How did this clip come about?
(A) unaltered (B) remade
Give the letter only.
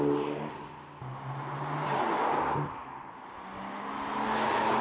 A